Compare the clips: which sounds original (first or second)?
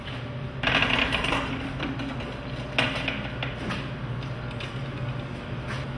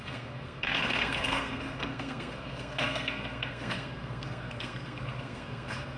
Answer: first